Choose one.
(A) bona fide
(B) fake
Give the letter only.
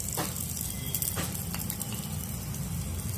A